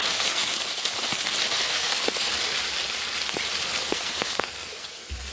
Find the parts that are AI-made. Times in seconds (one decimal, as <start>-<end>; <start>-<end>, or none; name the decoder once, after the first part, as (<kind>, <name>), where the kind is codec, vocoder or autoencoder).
0.0-2.3 (codec, SNAC); 3.9-5.3